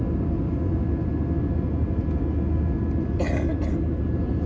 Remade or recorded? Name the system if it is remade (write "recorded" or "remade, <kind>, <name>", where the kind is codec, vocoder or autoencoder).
recorded